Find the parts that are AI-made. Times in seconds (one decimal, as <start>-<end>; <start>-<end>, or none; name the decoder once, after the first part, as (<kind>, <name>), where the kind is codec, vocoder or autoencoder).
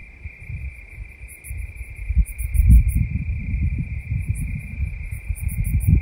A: none